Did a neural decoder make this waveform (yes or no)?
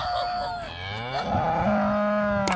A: no